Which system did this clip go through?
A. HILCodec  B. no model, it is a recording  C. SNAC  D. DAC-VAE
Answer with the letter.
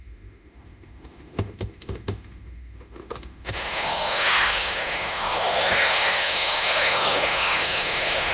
D